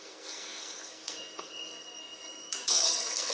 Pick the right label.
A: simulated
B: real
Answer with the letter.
A